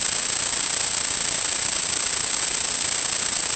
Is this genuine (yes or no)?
yes